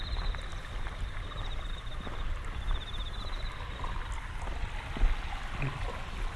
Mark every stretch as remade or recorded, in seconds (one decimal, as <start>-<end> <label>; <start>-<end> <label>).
0.0-6.4 recorded